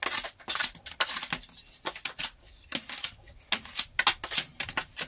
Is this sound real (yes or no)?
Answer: yes